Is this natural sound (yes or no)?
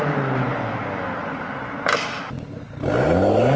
yes